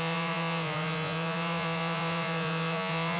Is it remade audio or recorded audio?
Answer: remade